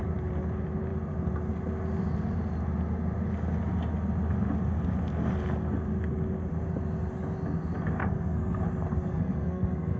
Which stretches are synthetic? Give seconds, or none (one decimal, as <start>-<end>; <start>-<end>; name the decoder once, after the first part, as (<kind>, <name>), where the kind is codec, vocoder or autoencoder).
8.0-8.6 (codec, SNAC); 9.1-10.0